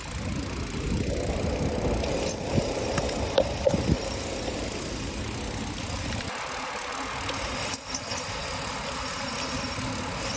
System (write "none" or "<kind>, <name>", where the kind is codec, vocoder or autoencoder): none